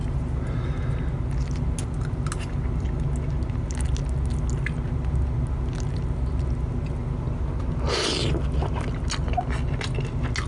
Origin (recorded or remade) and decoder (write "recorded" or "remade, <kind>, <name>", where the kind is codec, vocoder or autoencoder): recorded